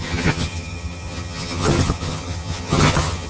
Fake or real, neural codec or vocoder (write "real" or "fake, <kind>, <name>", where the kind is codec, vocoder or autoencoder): fake, vocoder, HiFi-GAN